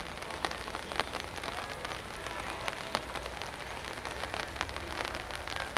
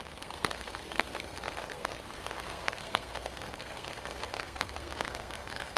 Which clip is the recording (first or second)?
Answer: first